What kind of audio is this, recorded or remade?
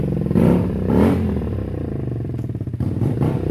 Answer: remade